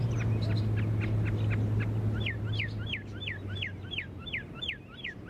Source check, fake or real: real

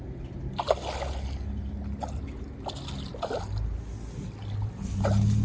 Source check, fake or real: real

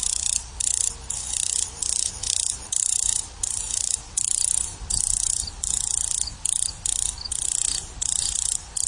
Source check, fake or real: real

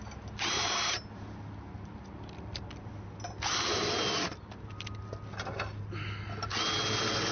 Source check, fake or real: real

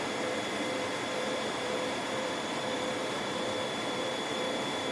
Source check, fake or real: fake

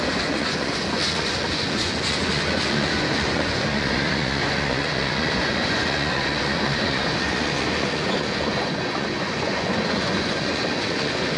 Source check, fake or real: fake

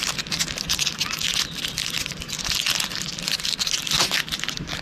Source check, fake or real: real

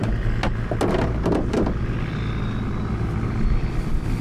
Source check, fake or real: real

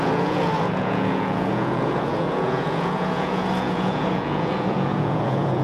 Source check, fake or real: fake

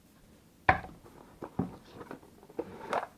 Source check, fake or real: real